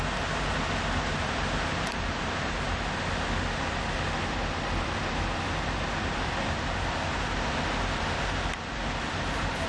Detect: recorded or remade remade